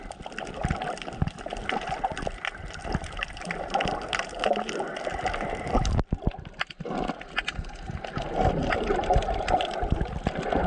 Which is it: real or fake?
real